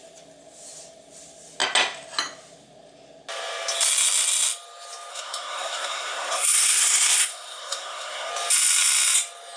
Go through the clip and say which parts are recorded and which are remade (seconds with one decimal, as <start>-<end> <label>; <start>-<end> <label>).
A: 0.0-5.1 recorded; 5.1-8.3 remade; 8.3-9.6 recorded